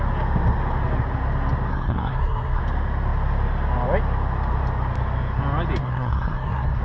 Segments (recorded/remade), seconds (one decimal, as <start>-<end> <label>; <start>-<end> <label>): 0.0-1.7 recorded; 1.7-2.6 remade; 2.6-5.8 recorded; 5.8-6.8 remade